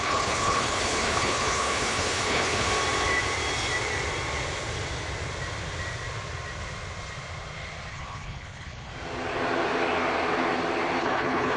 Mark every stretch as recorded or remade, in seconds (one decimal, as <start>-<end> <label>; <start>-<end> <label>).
0.0-2.7 remade; 2.7-7.9 recorded; 7.9-8.9 remade; 8.9-11.0 recorded; 11.0-11.6 remade